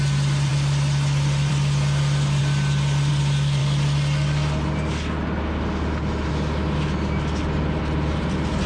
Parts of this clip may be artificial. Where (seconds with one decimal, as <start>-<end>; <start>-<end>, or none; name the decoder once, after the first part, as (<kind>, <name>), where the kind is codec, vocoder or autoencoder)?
none